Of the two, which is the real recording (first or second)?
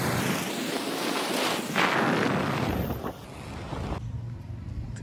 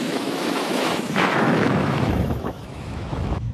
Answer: first